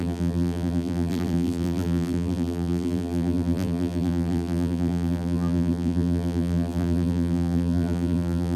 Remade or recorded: remade